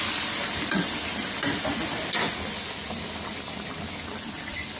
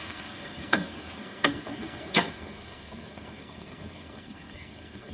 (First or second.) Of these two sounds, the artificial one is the second